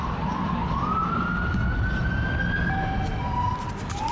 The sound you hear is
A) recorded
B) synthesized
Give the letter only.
A